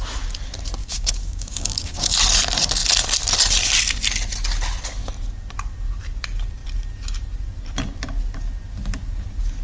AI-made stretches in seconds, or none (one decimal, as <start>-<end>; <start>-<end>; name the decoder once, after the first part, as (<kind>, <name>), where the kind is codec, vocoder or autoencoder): 0.8-2.1 (codec, DAC)